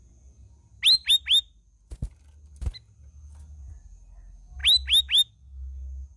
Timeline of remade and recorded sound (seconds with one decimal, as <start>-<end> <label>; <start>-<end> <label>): 0.0-6.2 recorded

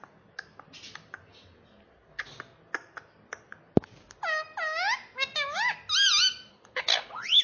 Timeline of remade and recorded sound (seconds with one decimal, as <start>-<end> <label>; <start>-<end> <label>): 0.0-6.5 recorded; 6.5-7.4 remade

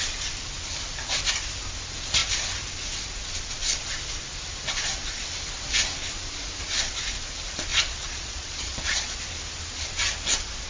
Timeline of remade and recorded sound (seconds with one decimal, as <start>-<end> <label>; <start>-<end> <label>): 0.0-7.7 recorded; 7.7-9.2 remade; 9.2-10.7 recorded

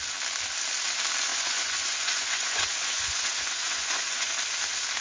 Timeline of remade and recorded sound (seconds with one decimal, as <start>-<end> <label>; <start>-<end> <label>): 0.0-1.3 recorded; 1.3-4.3 remade; 4.3-5.0 recorded

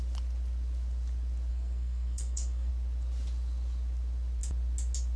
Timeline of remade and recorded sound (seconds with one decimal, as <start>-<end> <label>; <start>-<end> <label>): 0.0-1.5 recorded; 1.5-2.7 remade; 2.7-5.2 recorded